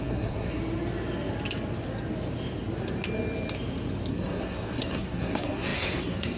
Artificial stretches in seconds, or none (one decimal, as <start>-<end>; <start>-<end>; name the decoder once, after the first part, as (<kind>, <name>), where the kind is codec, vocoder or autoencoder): 0.0-0.6 (codec, SNAC); 4.1-6.4